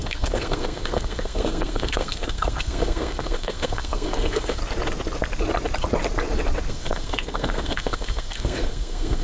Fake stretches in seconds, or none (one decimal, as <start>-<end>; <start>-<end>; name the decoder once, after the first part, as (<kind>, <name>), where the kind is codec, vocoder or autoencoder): 0.0-4.6 (codec, SNAC); 6.7-9.2

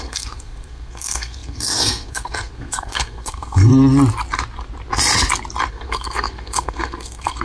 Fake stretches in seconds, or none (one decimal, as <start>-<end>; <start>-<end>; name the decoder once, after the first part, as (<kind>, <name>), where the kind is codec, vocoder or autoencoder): 0.0-3.7 (codec, SNAC); 5.7-7.4

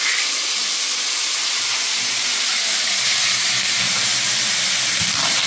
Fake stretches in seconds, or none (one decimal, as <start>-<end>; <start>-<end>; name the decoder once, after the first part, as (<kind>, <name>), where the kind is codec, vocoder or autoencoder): none

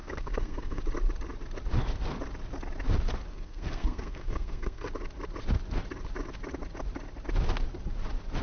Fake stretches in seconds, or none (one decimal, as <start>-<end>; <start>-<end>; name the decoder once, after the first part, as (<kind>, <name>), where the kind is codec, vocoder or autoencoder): 0.0-0.8 (codec, SNAC); 3.3-4.9

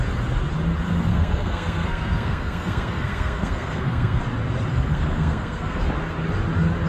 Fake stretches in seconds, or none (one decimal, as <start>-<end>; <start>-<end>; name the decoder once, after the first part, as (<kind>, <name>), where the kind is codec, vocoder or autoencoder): 1.1-4.2 (codec, SNAC); 4.7-5.8

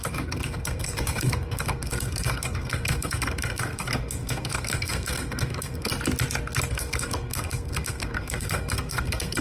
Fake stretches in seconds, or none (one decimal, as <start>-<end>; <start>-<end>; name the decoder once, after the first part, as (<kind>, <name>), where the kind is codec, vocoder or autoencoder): 0.0-5.9 (codec, SNAC); 6.7-9.4